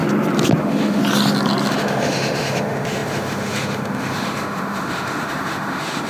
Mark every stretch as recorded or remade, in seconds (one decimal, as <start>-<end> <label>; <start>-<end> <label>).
0.0-0.6 recorded; 0.6-1.0 remade; 1.0-1.7 recorded; 1.7-6.1 remade